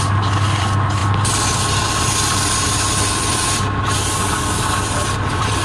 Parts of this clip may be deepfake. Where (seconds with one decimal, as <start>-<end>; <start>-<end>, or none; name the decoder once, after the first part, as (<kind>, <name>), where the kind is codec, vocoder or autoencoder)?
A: none